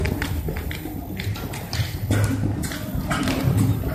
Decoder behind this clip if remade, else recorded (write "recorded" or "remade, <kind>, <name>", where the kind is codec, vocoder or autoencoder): recorded